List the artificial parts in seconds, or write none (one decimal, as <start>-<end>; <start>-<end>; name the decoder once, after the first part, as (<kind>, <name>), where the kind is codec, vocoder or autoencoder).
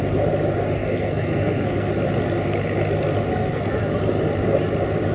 0.8-1.9 (codec, SNAC); 3.3-3.8